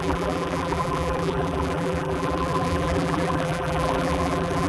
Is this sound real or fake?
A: fake